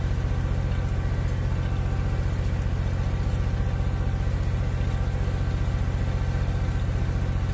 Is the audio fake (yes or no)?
no